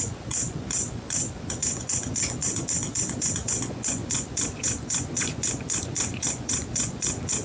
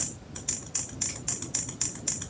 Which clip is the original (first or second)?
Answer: second